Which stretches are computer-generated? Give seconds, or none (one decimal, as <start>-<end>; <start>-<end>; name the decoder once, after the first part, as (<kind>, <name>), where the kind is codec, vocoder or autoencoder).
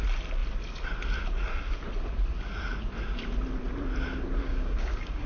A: 4.5-5.3 (codec, DAC)